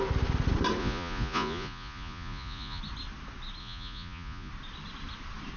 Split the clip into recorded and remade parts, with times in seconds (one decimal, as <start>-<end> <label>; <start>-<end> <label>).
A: 0.0-0.8 recorded; 0.8-2.8 remade; 2.8-3.6 recorded; 3.6-4.5 remade; 4.5-5.6 recorded